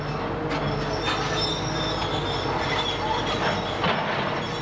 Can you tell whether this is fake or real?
real